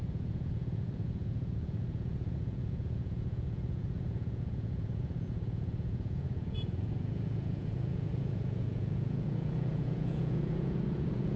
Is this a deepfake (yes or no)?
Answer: yes